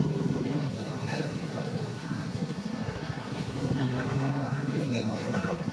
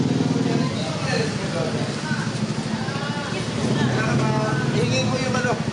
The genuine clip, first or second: second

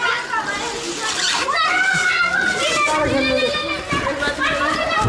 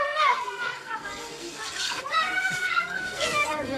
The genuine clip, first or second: first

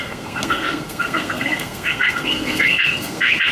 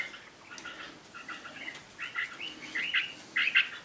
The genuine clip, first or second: second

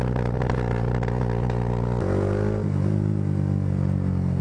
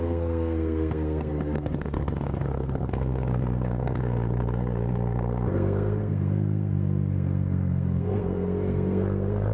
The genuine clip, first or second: first